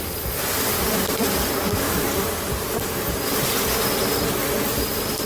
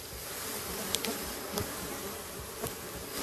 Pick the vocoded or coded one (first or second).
second